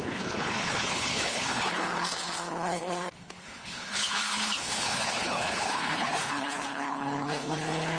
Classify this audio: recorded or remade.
remade